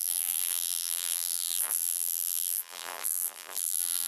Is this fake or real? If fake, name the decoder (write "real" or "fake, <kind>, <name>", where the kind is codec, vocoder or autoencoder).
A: fake, vocoder, BigVGAN v2